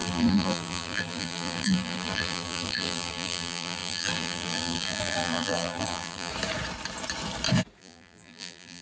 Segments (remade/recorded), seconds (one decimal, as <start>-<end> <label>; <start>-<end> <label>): 0.0-6.3 remade; 6.3-7.8 recorded; 7.8-8.8 remade